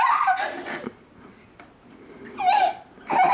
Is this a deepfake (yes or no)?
no